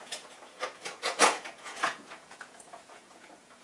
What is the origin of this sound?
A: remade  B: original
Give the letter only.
A